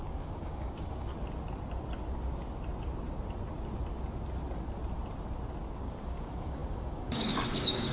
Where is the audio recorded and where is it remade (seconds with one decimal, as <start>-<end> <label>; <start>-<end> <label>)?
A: 0.0-1.1 remade; 1.1-5.8 recorded; 5.8-7.9 remade